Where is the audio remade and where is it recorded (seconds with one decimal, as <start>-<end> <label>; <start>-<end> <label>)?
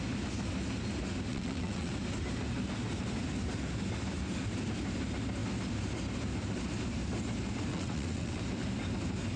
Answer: 0.0-1.3 recorded; 1.3-1.9 remade; 1.9-7.7 recorded; 7.7-8.4 remade; 8.4-9.4 recorded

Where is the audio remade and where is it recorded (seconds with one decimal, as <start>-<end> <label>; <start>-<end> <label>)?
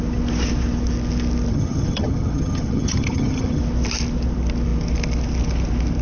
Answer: 0.0-1.5 recorded; 1.5-3.6 remade; 3.6-6.0 recorded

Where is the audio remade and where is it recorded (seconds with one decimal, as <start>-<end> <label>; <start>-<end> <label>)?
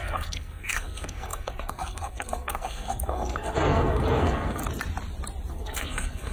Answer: 0.0-4.6 remade; 4.6-5.5 recorded; 5.5-6.3 remade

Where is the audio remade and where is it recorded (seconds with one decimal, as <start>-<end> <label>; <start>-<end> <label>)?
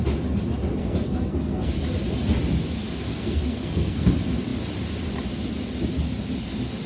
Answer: 0.0-0.8 recorded; 0.8-1.7 remade; 1.7-3.1 recorded; 3.1-4.1 remade; 4.1-6.9 recorded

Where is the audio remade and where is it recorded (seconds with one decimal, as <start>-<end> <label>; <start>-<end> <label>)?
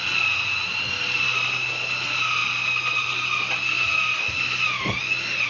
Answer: 0.0-5.5 recorded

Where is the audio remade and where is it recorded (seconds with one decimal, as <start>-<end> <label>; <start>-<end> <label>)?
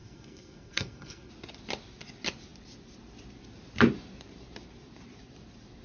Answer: 0.0-1.3 remade; 1.3-5.8 recorded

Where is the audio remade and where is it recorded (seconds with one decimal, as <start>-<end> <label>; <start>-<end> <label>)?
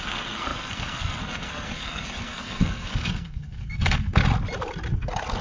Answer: 0.0-4.2 remade; 4.2-4.9 recorded; 4.9-5.4 remade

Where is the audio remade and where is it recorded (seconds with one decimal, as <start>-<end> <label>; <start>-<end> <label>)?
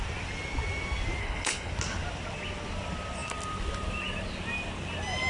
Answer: 0.0-1.2 recorded; 1.2-1.7 remade; 1.7-5.3 recorded